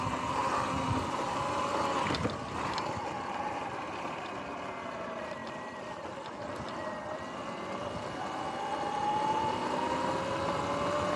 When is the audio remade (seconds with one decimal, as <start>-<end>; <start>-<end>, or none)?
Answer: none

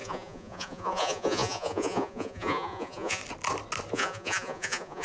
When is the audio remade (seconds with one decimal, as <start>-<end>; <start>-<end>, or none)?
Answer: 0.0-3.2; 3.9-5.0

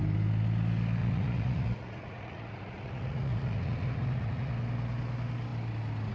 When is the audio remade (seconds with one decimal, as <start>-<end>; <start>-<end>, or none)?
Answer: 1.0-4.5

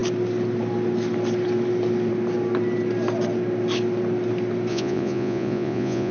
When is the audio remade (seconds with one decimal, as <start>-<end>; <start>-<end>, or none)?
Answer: 4.7-6.1

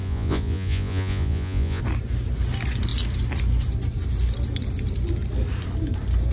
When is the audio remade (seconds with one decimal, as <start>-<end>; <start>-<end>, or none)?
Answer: 0.0-1.8

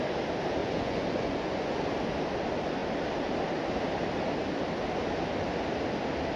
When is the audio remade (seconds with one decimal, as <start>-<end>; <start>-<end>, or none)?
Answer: 0.6-1.8

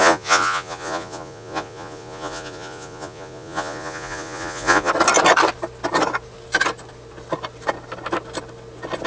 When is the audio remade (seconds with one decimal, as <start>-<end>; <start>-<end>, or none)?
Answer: 0.0-4.9